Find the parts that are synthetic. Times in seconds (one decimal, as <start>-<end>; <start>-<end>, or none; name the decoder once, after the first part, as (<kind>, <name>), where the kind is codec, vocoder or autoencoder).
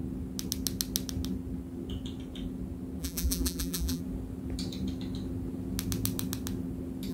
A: 3.0-4.0 (vocoder, BigVGAN v2)